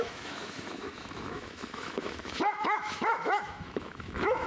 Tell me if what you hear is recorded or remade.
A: remade